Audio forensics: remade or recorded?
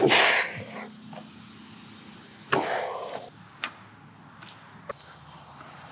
recorded